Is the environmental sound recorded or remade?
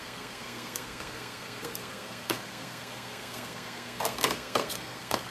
remade